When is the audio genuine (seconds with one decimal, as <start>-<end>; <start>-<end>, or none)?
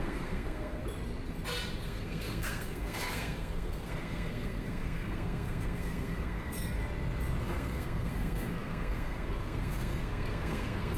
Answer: 0.8-1.8; 6.8-7.4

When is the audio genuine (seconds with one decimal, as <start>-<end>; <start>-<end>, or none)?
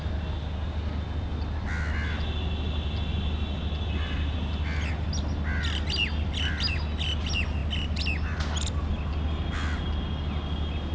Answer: 0.0-10.9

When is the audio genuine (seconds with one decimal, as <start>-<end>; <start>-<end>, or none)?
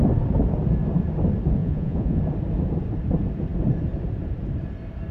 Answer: 0.0-1.6; 2.2-5.1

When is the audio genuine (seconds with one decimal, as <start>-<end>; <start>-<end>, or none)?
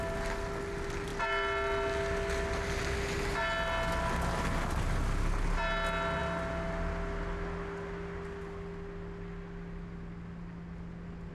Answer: 0.0-11.3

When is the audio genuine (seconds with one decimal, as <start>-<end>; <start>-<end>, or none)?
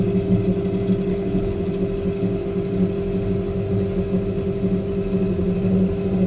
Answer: 0.0-1.1; 1.7-6.3